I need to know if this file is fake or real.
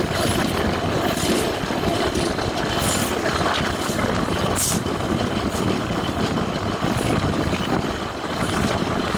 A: real